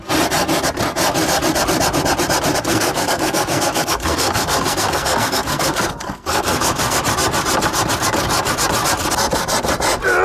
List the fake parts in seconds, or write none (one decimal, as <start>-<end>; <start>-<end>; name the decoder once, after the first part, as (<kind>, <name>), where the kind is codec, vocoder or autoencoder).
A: 2.7-7.0 (codec, SNAC)